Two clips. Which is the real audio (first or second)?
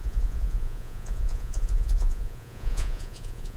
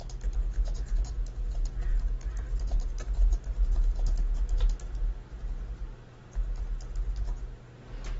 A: second